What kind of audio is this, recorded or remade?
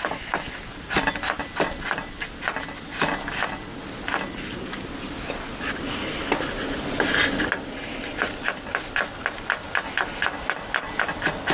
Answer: recorded